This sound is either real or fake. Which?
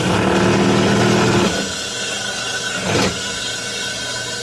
real